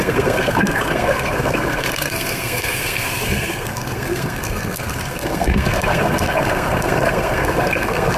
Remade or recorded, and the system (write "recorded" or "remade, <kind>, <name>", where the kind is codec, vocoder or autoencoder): remade, codec, SNAC